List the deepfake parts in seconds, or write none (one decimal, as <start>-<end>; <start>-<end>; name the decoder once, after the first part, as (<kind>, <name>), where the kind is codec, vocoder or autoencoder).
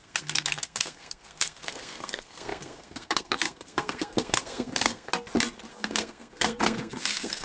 0.0-5.1 (codec, SNAC); 5.7-7.4